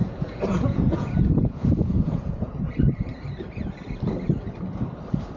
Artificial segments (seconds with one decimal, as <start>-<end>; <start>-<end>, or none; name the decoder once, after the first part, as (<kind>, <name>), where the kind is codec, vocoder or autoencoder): 0.0-2.5 (vocoder, Vocos)